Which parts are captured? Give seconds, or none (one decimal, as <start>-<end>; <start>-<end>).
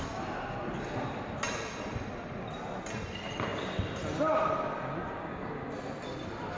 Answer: 0.0-6.6